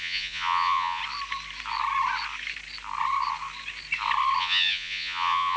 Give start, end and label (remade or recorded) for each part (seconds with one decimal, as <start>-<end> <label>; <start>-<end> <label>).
0.0-1.0 remade; 1.0-4.4 recorded; 4.4-5.6 remade